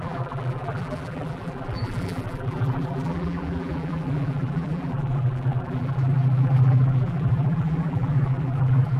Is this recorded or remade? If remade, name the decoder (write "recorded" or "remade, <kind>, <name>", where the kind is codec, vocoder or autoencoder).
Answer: remade, vocoder, BigVGAN v2